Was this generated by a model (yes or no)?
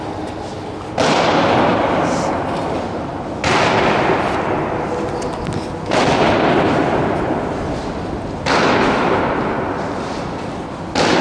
no